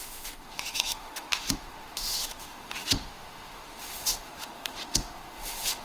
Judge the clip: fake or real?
fake